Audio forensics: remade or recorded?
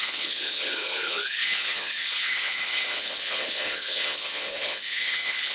remade